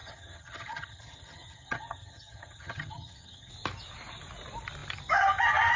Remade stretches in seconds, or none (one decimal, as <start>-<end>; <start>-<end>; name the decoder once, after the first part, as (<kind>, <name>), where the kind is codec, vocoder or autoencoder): 0.0-3.5 (vocoder, HiFi-GAN)